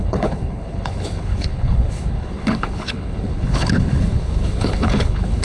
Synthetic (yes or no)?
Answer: yes